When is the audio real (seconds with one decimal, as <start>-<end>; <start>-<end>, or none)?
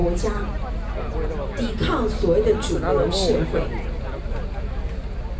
0.0-5.4